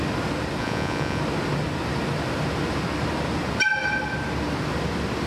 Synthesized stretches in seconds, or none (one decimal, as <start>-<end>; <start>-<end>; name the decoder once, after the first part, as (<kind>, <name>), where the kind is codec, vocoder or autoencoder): 0.6-1.2 (vocoder, Vocos)